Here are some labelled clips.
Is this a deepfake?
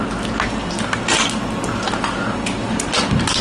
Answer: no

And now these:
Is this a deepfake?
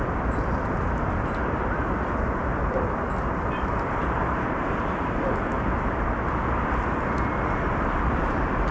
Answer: no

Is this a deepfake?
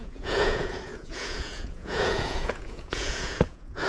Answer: yes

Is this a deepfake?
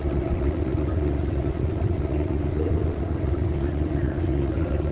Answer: yes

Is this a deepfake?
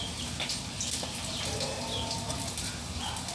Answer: no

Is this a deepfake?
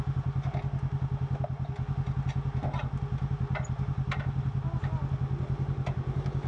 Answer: no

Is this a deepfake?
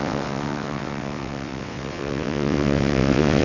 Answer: yes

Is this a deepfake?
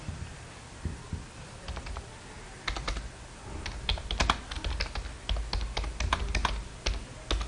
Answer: no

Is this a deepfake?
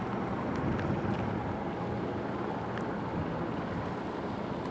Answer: no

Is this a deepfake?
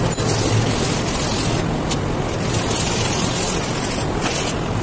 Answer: no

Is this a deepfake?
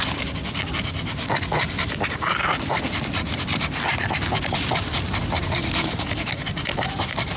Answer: yes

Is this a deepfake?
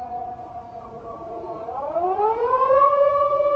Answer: yes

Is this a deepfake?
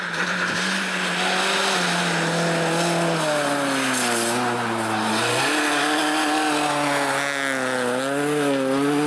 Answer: no